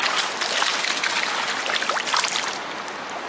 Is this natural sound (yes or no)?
yes